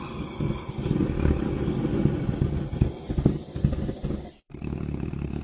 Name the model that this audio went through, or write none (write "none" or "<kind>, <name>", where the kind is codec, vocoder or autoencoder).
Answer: none